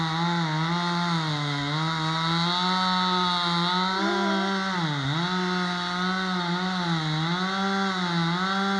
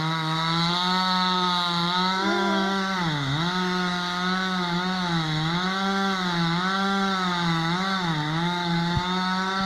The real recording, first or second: first